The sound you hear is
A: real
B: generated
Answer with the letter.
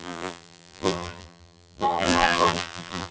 B